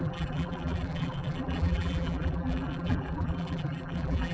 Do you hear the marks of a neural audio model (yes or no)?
yes